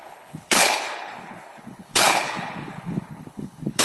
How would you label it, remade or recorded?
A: remade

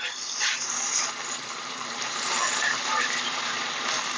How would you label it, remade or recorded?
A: remade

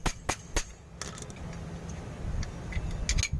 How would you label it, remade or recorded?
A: recorded